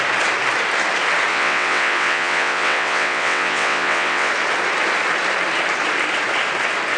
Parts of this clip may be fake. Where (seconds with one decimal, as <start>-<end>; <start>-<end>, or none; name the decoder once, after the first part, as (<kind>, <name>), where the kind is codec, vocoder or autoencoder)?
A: 1.3-4.3 (vocoder, WaveNeXt)